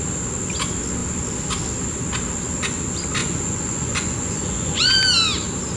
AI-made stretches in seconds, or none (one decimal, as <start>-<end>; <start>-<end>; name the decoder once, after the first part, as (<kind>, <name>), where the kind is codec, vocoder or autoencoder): 3.2-4.9 (vocoder, Vocos)